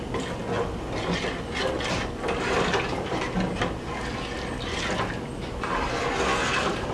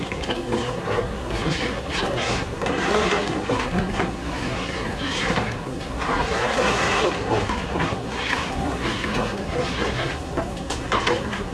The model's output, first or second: second